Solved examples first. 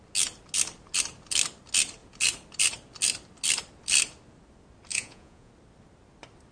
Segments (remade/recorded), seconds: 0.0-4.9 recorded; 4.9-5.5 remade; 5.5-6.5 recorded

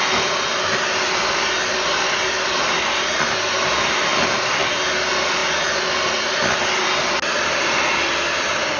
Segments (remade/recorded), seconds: 0.0-8.8 recorded

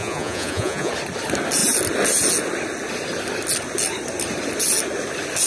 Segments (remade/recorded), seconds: 0.0-0.9 remade; 0.9-5.5 recorded

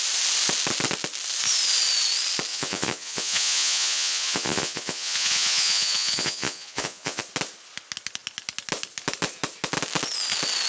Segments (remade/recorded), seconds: 0.0-2.5 recorded; 2.5-7.2 remade; 7.2-10.7 recorded

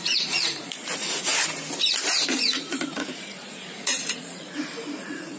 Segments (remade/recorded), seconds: 0.0-1.3 remade; 1.3-2.3 recorded; 2.3-5.4 remade